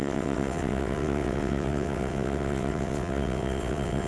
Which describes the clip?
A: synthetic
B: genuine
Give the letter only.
A